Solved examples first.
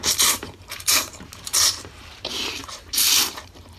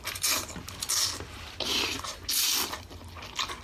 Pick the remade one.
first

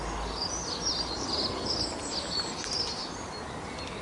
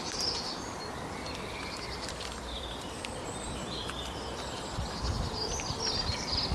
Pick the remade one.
second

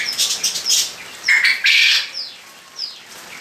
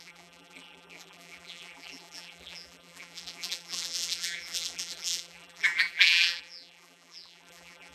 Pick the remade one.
second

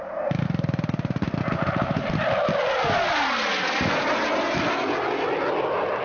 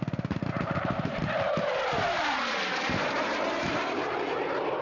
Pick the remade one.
second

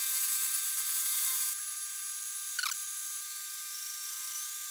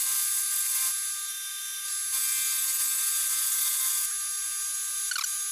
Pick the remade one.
first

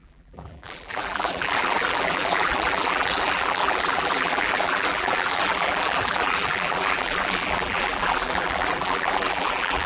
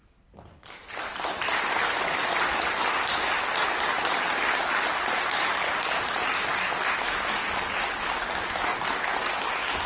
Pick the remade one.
first